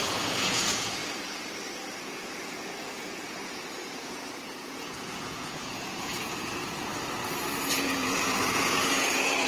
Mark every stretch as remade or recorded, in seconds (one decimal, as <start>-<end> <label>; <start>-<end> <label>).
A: 0.0-1.0 remade; 1.0-2.0 recorded; 2.0-6.9 remade; 6.9-7.7 recorded; 7.7-9.5 remade